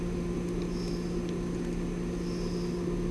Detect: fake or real real